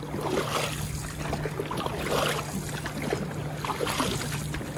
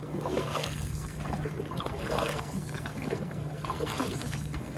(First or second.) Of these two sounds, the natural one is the first